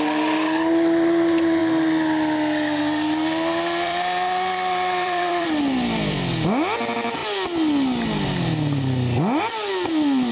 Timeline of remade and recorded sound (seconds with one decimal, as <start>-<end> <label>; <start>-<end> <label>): 0.0-1.6 remade; 1.6-2.8 recorded; 2.8-7.2 remade; 7.2-9.4 recorded; 9.4-10.3 remade